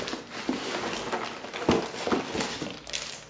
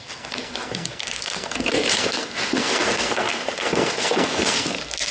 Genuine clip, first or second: first